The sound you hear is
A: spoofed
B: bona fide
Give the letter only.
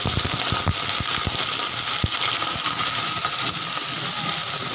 B